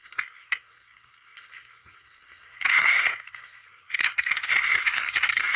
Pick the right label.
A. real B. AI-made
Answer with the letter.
B